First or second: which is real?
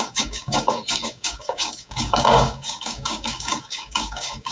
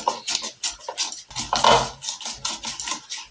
second